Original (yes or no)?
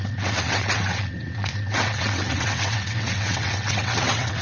no